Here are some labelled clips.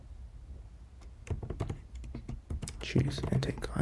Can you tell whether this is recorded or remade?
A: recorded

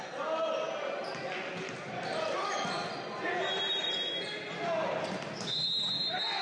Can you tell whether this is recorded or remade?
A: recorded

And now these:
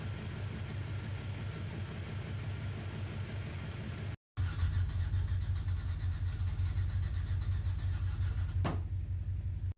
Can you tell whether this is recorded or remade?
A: recorded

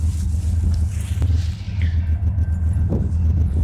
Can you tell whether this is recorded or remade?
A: recorded